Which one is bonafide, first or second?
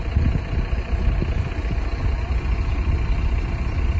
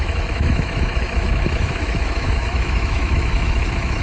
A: first